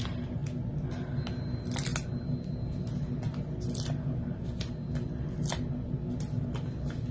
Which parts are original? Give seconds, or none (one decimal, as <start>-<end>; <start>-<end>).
0.0-7.1